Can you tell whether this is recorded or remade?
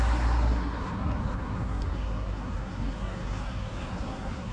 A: remade